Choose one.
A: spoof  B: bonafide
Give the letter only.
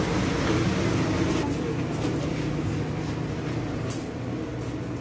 B